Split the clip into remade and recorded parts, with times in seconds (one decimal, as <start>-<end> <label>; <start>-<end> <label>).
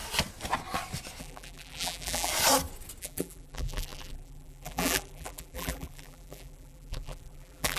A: 0.0-1.2 recorded; 1.2-2.3 remade; 2.3-3.0 recorded; 3.0-7.8 remade